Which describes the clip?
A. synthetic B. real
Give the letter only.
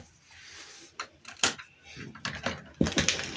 B